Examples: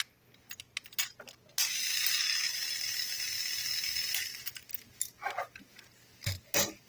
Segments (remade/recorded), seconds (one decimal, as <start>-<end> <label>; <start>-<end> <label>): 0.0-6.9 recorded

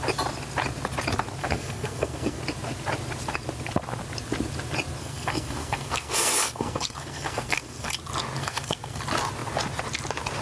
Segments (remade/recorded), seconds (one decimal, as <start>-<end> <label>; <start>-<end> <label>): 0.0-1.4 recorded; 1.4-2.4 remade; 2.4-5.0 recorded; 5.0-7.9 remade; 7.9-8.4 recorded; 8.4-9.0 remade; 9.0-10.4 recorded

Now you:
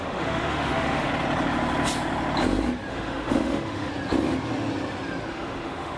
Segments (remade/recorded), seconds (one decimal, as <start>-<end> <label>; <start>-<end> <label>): 0.0-1.1 remade; 1.1-2.9 recorded; 2.9-3.9 remade; 3.9-5.3 recorded; 5.3-6.0 remade

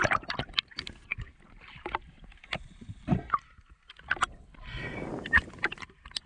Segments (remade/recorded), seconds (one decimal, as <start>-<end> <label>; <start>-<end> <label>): 0.0-1.1 recorded; 1.1-3.0 remade; 3.0-5.1 recorded; 5.1-6.3 remade

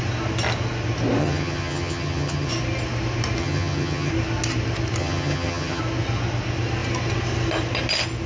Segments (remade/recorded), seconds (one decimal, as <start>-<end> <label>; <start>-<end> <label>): 0.0-1.2 recorded; 1.2-2.5 remade; 2.5-3.4 recorded; 3.4-4.1 remade; 4.1-5.0 recorded; 5.0-5.8 remade; 5.8-8.3 recorded